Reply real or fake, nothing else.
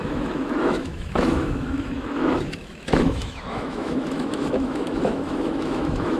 fake